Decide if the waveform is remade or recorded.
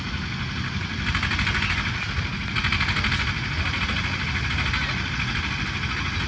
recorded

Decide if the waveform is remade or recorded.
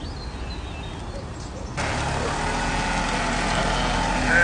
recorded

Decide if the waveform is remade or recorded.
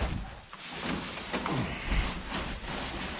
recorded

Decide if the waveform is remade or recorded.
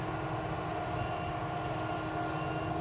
recorded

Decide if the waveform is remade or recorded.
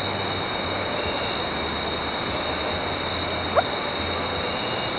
recorded